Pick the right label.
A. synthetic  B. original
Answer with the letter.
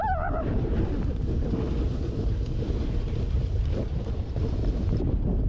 A